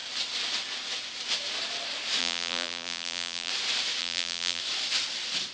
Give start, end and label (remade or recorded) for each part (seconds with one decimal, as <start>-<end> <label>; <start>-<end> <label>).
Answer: 0.0-2.2 recorded; 2.2-3.5 remade; 3.5-4.0 recorded; 4.0-4.6 remade; 4.6-5.5 recorded